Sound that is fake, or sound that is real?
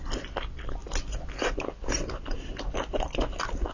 real